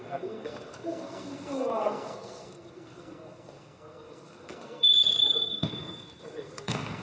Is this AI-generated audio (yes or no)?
yes